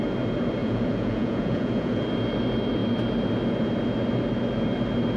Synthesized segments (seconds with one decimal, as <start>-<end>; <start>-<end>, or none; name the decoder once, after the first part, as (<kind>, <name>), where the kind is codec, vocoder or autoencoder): 0.6-2.0 (vocoder, Vocos)